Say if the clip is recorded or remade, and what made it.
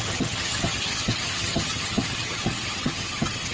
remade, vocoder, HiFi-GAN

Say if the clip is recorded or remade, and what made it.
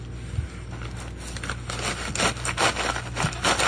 recorded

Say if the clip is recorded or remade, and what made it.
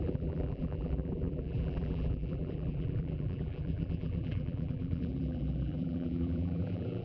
remade, vocoder, BigVGAN v2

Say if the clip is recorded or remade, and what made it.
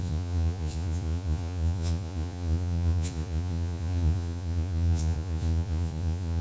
remade, vocoder, Vocos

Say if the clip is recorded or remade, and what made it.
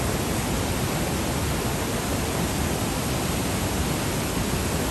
recorded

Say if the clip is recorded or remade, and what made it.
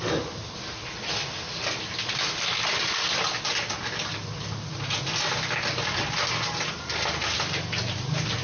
recorded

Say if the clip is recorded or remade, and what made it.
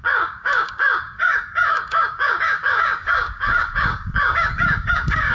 remade, codec, DAC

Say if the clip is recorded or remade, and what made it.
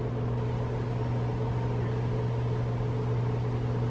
recorded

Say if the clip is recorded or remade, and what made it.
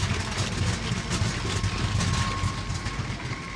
recorded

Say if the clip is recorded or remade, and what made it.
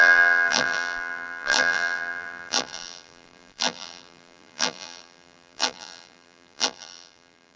remade, vocoder, BigVGAN v2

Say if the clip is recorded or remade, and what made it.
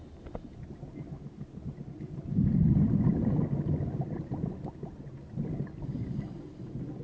recorded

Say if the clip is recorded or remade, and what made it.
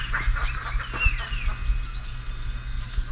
recorded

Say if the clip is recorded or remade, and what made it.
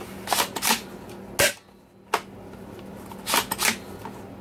recorded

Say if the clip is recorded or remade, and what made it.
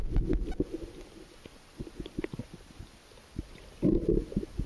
recorded